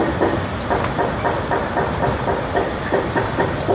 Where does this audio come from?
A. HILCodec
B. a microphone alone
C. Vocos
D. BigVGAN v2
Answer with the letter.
B